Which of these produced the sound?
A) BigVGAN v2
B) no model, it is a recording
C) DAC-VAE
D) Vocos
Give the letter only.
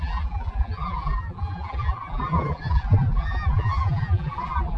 A